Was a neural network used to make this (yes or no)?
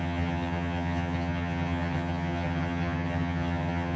yes